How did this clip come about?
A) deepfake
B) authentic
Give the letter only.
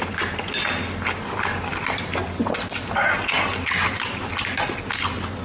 B